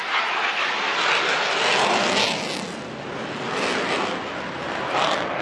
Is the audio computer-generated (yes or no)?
no